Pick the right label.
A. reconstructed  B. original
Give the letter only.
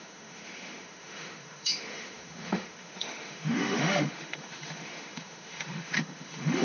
A